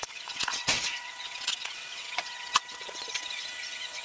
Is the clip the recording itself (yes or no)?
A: no